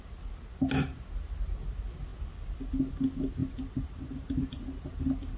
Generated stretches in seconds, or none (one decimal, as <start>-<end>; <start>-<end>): none